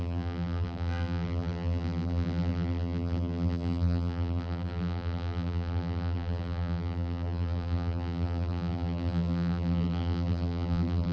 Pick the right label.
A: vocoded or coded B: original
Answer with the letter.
A